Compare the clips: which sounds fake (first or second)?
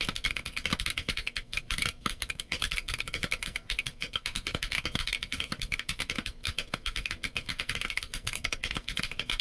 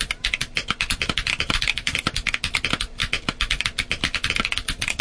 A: first